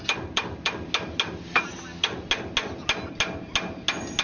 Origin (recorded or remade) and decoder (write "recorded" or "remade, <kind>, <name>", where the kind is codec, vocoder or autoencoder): recorded